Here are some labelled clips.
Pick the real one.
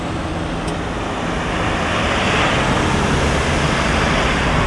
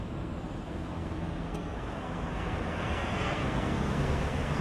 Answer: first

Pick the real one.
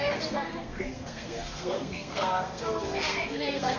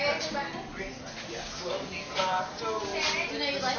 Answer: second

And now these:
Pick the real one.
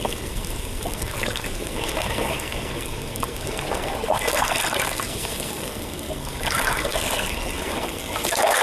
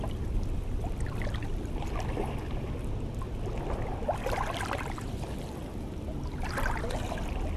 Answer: second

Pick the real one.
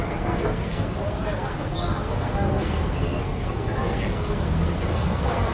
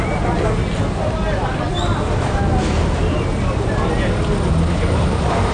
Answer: second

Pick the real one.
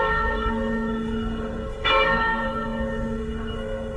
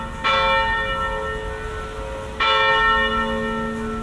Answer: second